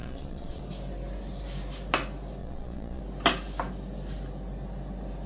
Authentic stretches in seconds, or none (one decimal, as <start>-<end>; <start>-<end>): 0.6-2.4; 3.0-5.3